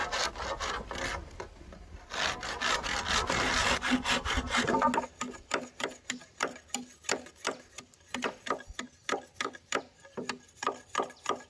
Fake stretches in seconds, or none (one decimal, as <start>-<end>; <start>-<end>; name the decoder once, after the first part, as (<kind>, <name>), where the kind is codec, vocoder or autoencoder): none